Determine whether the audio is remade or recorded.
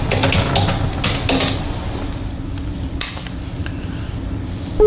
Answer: recorded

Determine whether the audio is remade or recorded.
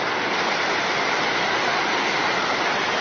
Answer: recorded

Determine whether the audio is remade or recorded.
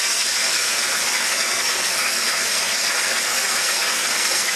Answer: remade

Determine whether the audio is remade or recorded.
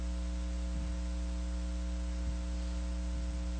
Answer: recorded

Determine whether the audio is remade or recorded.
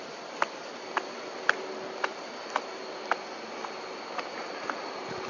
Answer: remade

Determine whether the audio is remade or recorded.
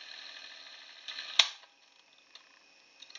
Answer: recorded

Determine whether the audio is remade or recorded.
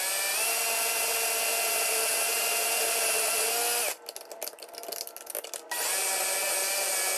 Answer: recorded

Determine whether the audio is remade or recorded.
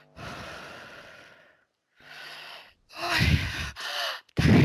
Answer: recorded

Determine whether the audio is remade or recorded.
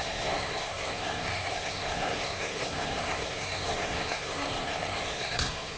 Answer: remade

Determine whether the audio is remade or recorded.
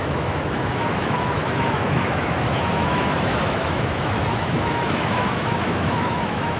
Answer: remade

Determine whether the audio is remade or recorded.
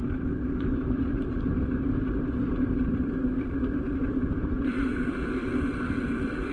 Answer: remade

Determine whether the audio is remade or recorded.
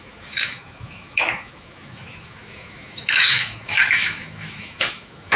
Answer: remade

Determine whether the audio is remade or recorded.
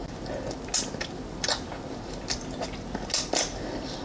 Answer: recorded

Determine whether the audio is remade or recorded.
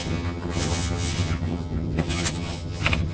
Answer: remade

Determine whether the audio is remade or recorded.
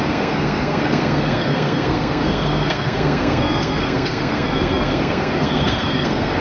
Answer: remade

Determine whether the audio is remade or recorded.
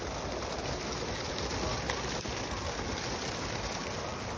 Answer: recorded